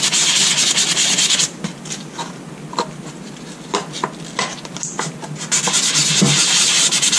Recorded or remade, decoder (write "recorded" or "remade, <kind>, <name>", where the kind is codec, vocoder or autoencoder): recorded